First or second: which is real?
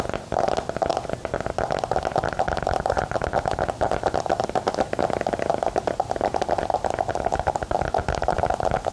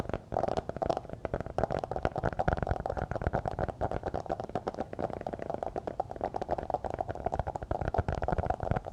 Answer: first